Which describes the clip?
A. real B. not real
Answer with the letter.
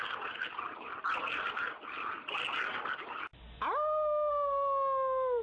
A